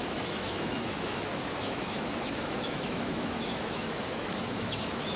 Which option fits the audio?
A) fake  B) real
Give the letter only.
A